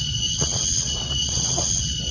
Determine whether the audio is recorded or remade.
remade